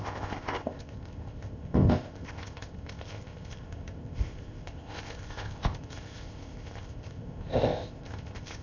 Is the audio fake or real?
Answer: fake